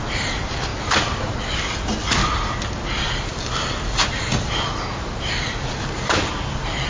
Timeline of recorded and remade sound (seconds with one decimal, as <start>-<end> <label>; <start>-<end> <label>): 0.0-6.9 recorded